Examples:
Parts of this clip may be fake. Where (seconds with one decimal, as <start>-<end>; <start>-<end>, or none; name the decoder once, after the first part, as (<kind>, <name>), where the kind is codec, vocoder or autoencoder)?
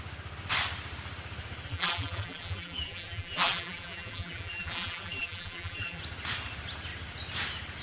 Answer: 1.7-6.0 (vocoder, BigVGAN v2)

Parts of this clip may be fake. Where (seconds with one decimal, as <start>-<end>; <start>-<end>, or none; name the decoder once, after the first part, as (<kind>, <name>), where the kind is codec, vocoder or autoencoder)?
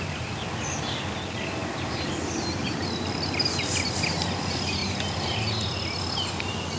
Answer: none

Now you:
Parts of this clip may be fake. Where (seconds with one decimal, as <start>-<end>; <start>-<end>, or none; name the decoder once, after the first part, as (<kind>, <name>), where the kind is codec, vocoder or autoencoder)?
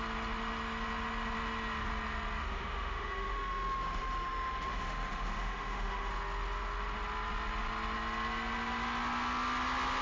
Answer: 2.4-6.1 (autoencoder, DAC-VAE)